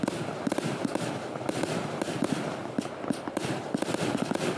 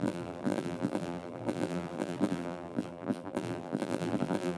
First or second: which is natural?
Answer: first